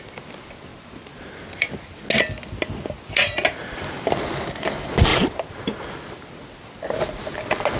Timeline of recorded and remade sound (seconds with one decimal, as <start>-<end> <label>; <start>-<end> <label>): 0.0-0.7 recorded; 0.7-1.7 remade; 1.7-5.1 recorded; 5.1-5.8 remade; 5.8-7.8 recorded